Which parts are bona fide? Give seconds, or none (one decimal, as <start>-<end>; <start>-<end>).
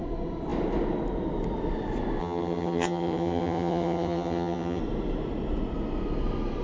0.0-2.2; 4.8-6.6